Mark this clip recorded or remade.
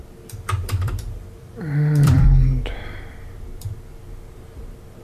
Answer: remade